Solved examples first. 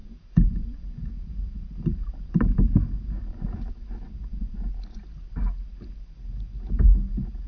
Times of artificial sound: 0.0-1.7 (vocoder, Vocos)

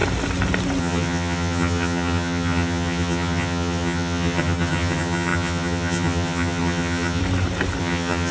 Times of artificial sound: 0.8-7.2 (vocoder, HiFi-GAN); 7.8-8.3

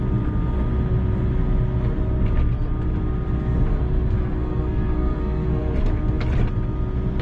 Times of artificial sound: 3.7-5.8 (codec, SNAC)

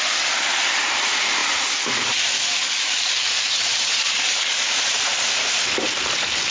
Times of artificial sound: 2.5-3.6 (codec, DAC); 4.0-4.7

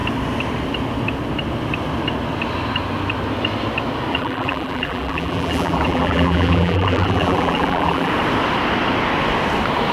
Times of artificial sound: 4.1-8.1 (vocoder, BigVGAN v2)

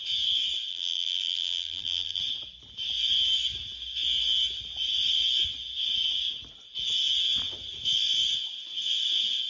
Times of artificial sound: 0.7-2.2 (vocoder, BigVGAN v2)